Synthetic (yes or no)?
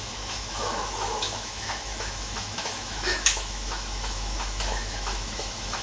yes